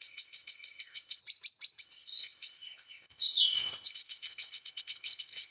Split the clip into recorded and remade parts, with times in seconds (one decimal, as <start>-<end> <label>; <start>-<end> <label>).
0.0-1.2 remade; 1.2-1.8 recorded; 1.8-5.5 remade